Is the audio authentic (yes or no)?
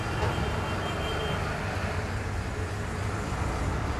yes